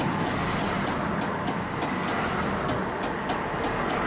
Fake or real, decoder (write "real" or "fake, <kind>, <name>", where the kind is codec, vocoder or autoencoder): real